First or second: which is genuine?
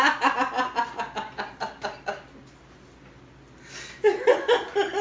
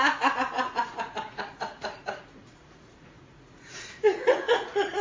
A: first